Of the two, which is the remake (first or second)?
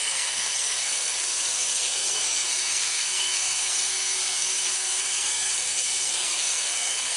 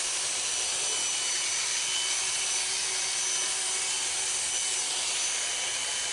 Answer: first